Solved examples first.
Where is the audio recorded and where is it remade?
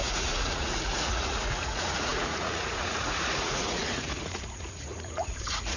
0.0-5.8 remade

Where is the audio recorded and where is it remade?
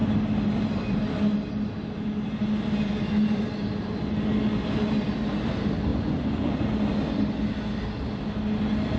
0.0-5.9 recorded; 5.9-6.5 remade; 6.5-9.0 recorded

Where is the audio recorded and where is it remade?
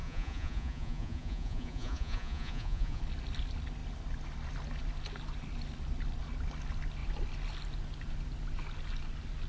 0.0-3.0 remade; 3.0-9.5 recorded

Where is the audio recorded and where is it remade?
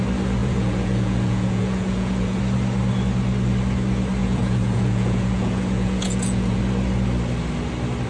0.0-0.4 recorded; 0.4-2.4 remade; 2.4-4.2 recorded; 4.2-6.6 remade; 6.6-8.1 recorded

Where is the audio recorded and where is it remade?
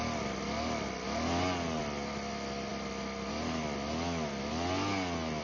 0.0-5.4 recorded